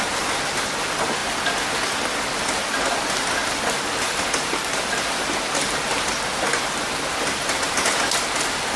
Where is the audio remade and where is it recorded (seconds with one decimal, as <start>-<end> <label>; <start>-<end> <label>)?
0.0-8.8 recorded